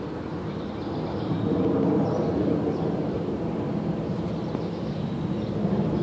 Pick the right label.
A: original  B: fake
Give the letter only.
A